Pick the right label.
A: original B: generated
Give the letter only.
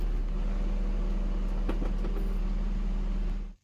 A